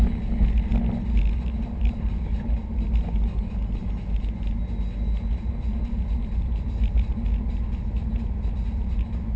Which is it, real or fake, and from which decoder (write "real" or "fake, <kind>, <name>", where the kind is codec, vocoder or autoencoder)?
real